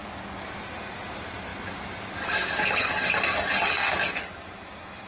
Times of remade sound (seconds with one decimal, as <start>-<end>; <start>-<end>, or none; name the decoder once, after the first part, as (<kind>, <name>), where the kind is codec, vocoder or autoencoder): none